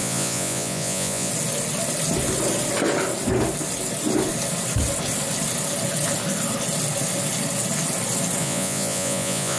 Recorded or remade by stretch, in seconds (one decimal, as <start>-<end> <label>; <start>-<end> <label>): 0.0-1.3 remade; 1.3-8.4 recorded; 8.4-9.6 remade